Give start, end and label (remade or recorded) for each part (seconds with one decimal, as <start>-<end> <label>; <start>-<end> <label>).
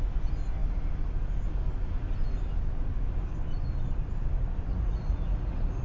0.0-4.7 recorded; 4.7-5.8 remade